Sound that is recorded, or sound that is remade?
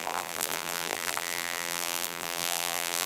remade